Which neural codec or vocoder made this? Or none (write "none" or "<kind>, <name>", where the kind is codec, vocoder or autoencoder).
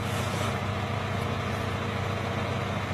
none